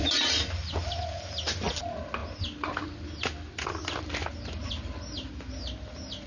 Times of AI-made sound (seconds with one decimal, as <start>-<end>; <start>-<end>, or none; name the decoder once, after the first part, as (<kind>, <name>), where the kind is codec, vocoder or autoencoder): none